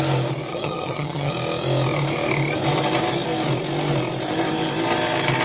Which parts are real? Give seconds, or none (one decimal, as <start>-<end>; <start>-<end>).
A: 0.0-0.5; 1.3-5.4